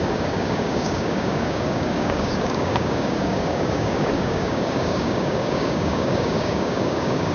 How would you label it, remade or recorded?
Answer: remade